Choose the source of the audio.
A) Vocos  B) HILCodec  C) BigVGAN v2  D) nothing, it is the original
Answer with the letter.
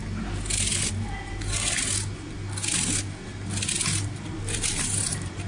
D